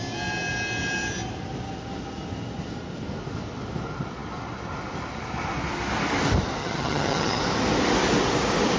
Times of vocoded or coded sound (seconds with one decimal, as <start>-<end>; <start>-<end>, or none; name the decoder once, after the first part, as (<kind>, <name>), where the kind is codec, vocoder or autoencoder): 6.6-7.4 (vocoder, HiFi-GAN)